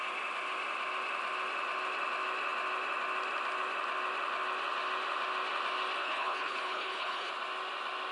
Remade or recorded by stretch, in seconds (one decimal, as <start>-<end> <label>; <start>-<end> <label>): 0.0-6.0 recorded; 6.0-7.3 remade; 7.3-8.1 recorded